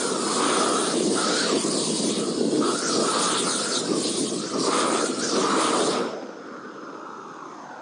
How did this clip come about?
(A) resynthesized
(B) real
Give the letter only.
B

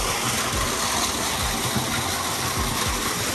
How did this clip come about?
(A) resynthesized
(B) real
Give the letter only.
B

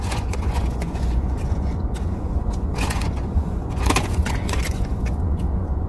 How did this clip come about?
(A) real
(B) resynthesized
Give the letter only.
B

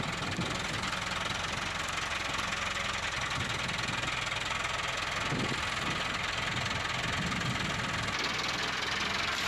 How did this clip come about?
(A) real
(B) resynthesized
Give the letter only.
A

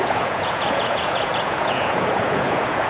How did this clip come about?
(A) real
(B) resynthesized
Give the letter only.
B